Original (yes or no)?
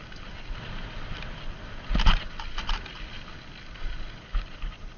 yes